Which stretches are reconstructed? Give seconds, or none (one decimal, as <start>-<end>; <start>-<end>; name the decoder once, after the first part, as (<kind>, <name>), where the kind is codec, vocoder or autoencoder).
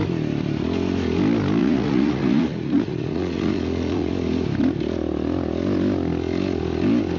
1.6-4.1 (vocoder, Vocos)